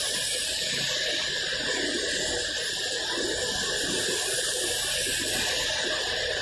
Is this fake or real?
real